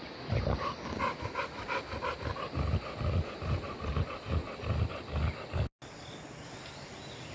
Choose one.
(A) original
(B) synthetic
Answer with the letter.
A